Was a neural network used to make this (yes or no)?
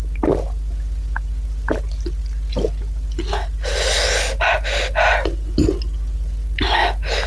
no